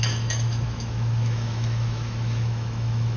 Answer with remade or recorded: remade